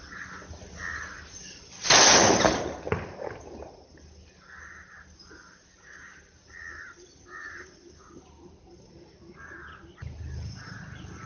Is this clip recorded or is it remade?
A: recorded